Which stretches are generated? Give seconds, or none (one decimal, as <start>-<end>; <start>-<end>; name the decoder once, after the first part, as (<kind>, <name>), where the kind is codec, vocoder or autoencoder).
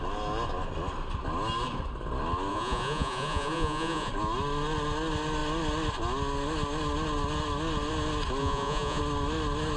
2.5-4.1 (vocoder, Vocos); 8.4-9.0